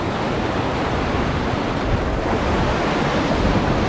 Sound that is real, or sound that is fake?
real